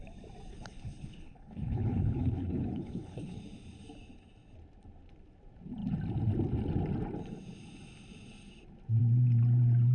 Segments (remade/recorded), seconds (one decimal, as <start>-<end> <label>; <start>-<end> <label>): 0.0-0.5 recorded; 0.5-3.4 remade; 3.4-9.9 recorded